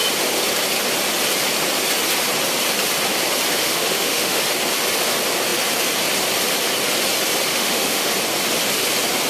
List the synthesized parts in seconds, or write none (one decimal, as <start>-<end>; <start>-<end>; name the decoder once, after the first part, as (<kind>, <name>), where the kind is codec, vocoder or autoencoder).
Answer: 3.6-4.4 (autoencoder, DAC-VAE); 7.5-8.1

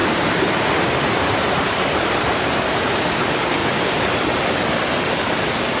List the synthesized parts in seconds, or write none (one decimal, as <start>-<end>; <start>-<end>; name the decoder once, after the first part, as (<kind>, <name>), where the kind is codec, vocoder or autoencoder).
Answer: 0.9-3.6 (vocoder, BigVGAN v2)

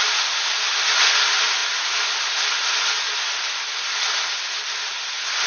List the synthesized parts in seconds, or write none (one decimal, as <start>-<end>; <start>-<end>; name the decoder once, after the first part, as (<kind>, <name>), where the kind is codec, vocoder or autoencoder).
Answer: none

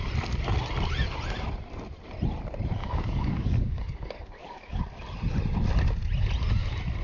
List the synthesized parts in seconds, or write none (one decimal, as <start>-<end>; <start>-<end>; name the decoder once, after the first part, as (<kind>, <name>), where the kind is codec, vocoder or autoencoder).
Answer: 2.8-4.8 (codec, DAC)

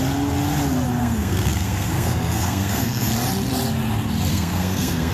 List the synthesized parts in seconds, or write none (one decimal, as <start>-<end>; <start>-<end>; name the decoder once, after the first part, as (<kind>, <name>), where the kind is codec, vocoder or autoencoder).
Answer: 1.0-3.1 (codec, SNAC); 4.3-5.1

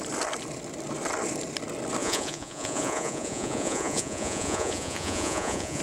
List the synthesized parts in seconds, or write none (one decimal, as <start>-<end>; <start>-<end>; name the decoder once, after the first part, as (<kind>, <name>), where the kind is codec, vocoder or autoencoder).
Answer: 2.0-5.8 (vocoder, Vocos)